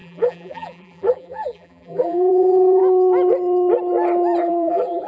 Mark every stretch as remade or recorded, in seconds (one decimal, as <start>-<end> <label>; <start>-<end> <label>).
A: 0.0-2.8 remade; 2.8-4.4 recorded; 4.4-5.1 remade